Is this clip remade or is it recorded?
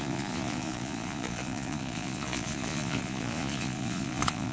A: remade